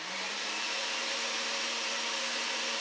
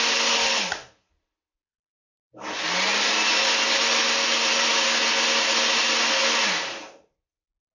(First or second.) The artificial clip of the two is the first